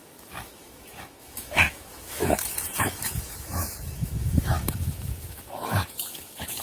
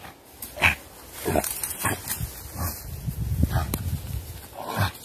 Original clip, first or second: second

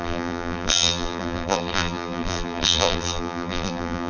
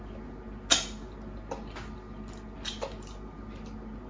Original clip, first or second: second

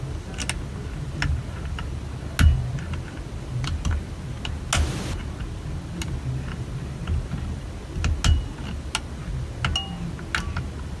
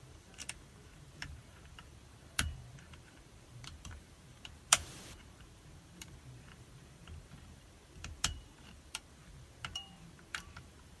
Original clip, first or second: first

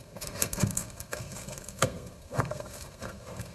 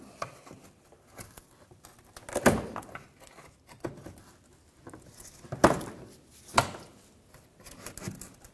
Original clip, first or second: second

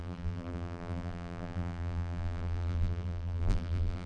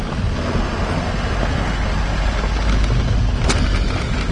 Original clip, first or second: second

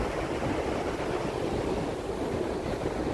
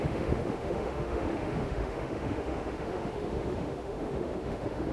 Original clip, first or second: first